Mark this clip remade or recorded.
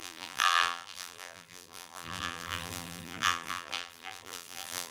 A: remade